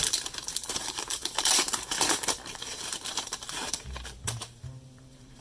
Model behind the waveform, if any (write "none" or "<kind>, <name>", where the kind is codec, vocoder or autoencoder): vocoder, BigVGAN v2